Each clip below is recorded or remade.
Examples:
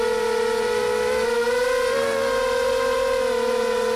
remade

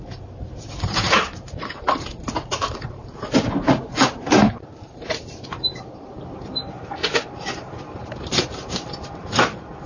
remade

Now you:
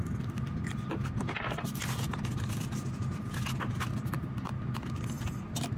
recorded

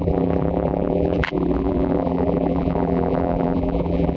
remade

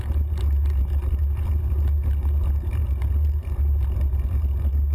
recorded